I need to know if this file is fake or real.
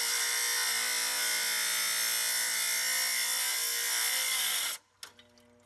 real